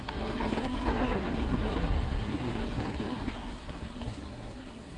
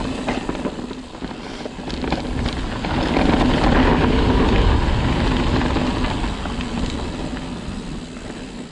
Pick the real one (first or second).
second